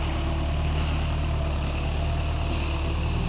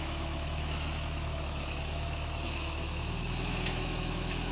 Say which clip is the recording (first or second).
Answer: first